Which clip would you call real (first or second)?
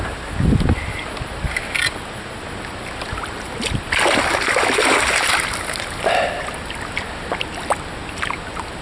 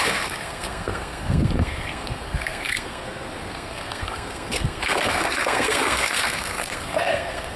first